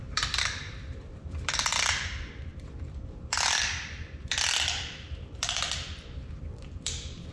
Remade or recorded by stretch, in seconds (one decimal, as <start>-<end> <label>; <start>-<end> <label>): 0.0-7.3 remade